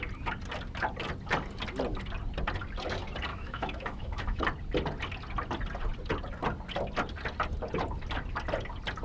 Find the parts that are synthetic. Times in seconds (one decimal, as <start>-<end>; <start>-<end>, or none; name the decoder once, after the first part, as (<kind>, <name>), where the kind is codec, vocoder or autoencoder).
3.3-4.4 (autoencoder, DAC-VAE)